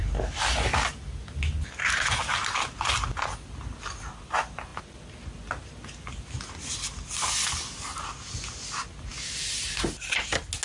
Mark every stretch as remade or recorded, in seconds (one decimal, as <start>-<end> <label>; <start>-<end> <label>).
0.0-10.6 recorded

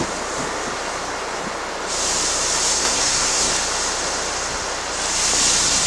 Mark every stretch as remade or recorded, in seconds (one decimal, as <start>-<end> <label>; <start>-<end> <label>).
0.0-2.7 recorded; 2.7-3.5 remade; 3.5-5.9 recorded

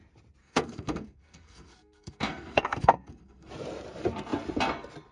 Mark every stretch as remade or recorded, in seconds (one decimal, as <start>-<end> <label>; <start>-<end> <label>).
0.0-0.4 recorded; 0.4-3.5 remade; 3.5-5.1 recorded

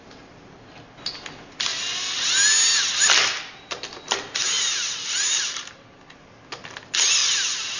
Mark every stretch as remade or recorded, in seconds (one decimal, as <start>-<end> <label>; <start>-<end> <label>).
0.0-7.8 recorded

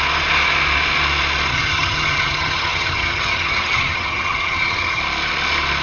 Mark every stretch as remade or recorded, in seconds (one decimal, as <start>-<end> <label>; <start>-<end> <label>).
0.0-1.5 recorded; 1.5-5.0 remade; 5.0-5.8 recorded

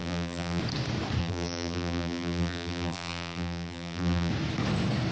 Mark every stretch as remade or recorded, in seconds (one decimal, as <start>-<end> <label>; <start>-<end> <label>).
0.0-0.6 remade; 0.6-1.2 recorded; 1.2-4.3 remade; 4.3-5.1 recorded

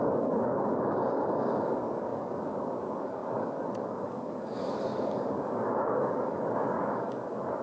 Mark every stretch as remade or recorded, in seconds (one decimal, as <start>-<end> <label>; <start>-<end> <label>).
0.0-7.6 remade

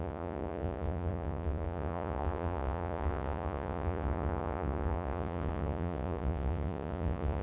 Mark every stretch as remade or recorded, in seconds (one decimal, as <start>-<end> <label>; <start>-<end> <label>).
0.0-7.4 remade